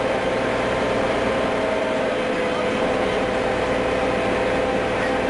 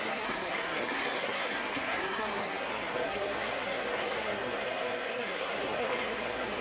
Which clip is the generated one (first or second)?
second